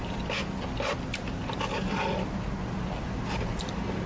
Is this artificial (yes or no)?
no